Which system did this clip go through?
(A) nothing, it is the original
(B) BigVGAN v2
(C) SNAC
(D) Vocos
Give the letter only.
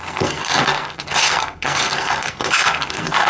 C